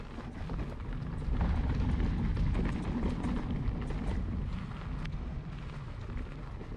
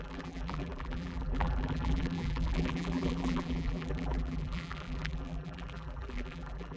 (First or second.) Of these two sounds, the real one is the first